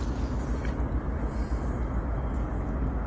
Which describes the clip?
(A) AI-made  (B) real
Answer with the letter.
B